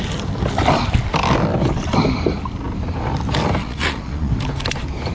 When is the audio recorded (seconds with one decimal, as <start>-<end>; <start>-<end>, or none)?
0.0-3.6; 4.3-5.1